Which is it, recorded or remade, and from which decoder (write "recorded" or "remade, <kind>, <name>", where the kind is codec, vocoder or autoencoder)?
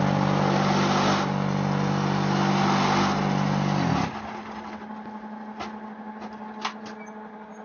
recorded